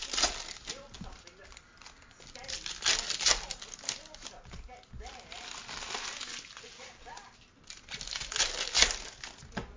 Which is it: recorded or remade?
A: recorded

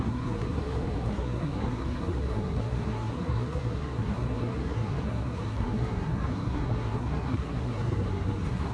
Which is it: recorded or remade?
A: remade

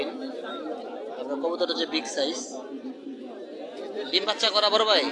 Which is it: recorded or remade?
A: recorded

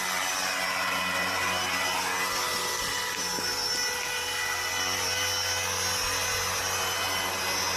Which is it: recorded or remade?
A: recorded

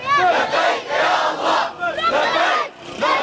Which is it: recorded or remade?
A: recorded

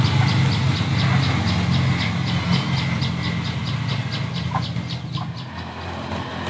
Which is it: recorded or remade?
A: recorded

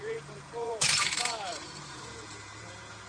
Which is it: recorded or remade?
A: remade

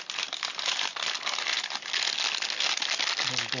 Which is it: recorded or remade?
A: recorded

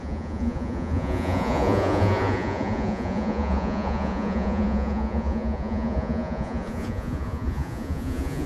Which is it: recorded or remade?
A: remade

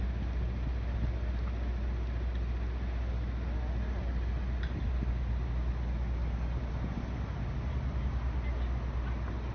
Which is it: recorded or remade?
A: recorded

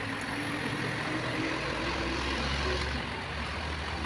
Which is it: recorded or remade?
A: recorded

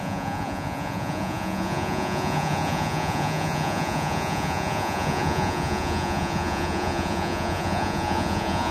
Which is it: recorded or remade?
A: remade